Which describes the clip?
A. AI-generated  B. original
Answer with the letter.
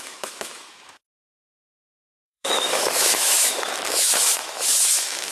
A